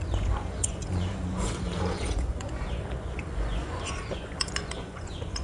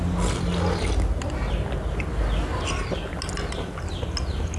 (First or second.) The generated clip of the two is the first